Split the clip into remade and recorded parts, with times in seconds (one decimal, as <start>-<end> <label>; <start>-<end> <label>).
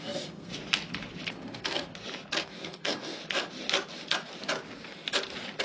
0.0-0.5 remade; 0.5-1.3 recorded; 1.3-1.9 remade; 1.9-2.4 recorded; 2.4-3.2 remade; 3.2-5.6 recorded